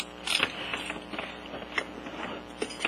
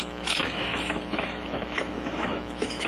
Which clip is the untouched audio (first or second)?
first